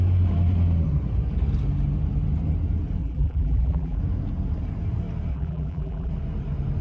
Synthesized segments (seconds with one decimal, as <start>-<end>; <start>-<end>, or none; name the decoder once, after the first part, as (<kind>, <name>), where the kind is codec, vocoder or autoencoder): 3.0-4.0 (vocoder, BigVGAN v2); 5.3-6.1